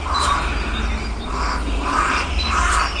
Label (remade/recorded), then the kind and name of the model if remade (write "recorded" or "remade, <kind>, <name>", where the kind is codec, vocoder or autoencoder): recorded